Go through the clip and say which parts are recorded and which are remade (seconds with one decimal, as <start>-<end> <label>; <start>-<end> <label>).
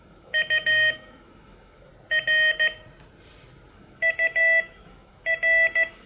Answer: 0.0-1.9 remade; 1.9-3.7 recorded; 3.7-6.1 remade